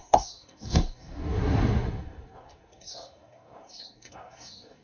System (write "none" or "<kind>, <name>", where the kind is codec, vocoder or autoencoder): codec, SNAC